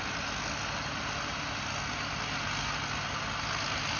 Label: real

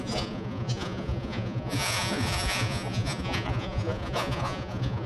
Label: fake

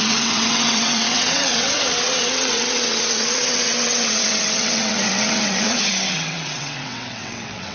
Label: fake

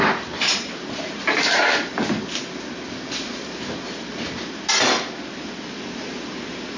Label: real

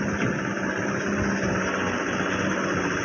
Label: real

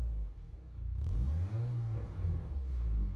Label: fake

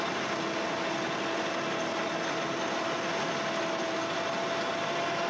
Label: real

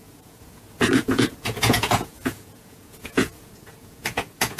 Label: fake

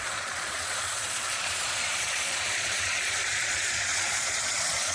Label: fake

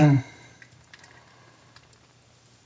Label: fake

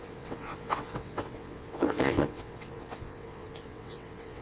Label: fake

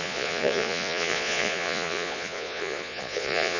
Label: fake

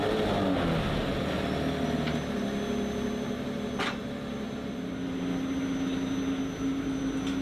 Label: real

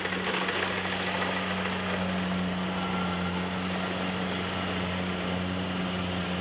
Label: real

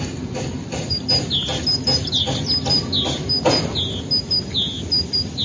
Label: real